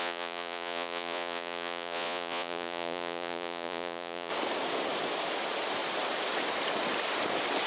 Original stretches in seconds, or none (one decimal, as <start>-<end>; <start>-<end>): 4.3-7.7